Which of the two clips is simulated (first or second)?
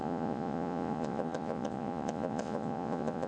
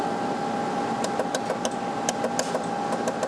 first